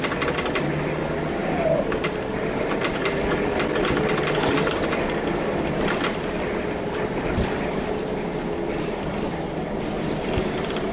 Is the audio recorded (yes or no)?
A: yes